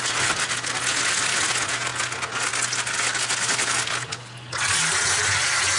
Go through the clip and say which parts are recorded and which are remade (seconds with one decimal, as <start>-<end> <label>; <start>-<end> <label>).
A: 0.0-5.8 recorded